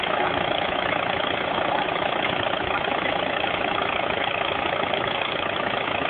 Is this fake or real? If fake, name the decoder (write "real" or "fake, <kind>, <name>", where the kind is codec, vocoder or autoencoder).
fake, autoencoder, DAC-VAE